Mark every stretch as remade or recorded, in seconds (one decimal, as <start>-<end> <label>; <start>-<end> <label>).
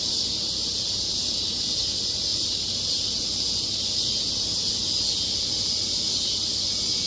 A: 0.0-7.1 recorded